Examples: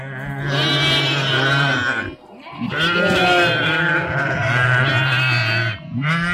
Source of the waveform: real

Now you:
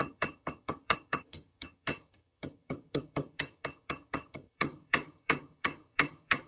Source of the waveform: fake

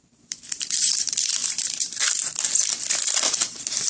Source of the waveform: fake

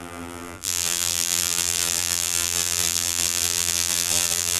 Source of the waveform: fake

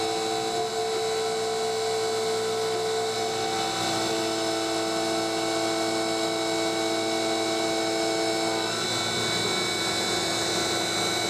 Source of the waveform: real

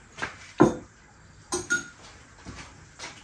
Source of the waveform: real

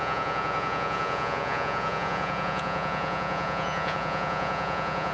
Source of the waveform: fake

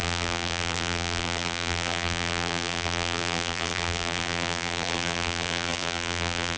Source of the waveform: fake